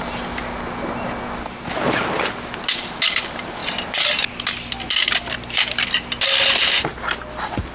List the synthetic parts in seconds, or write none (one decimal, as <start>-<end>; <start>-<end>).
none